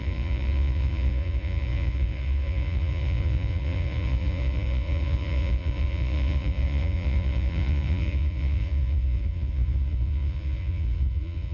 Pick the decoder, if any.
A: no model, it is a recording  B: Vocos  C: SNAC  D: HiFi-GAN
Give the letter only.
B